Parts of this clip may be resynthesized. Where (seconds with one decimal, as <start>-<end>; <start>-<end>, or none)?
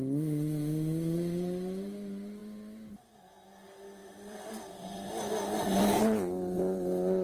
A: 2.4-3.1; 4.0-6.0